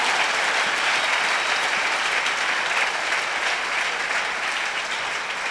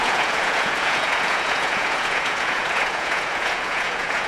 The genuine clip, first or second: first